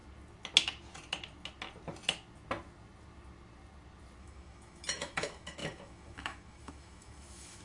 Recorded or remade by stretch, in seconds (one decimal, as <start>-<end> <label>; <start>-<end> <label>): 0.0-4.2 recorded; 4.2-7.6 remade